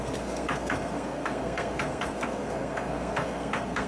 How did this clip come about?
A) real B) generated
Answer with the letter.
B